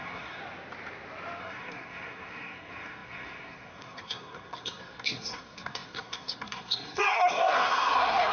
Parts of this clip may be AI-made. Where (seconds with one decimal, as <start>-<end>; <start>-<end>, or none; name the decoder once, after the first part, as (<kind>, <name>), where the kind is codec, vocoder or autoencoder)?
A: 0.0-0.4 (codec, SNAC); 1.4-8.3